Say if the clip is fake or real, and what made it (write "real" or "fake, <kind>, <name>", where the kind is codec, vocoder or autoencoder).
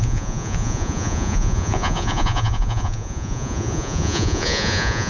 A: fake, vocoder, Vocos